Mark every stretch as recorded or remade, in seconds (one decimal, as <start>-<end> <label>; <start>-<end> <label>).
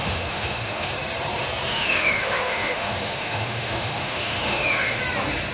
0.0-0.9 remade; 0.9-1.7 recorded; 1.7-5.0 remade; 5.0-5.5 recorded